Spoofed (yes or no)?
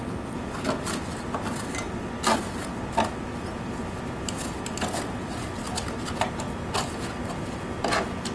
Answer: no